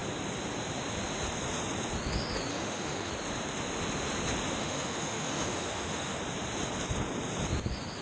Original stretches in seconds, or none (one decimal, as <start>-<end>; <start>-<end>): 0.0-2.5; 3.1-4.6; 6.2-8.0